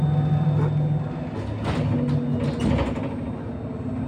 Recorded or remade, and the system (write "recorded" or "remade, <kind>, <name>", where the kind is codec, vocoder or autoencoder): recorded